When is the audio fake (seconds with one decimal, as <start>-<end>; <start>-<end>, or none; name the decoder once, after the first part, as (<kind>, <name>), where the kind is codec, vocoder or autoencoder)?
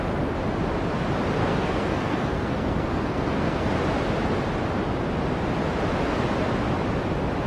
1.4-3.7 (codec, SNAC)